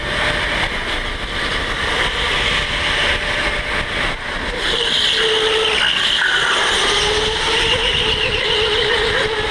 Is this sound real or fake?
real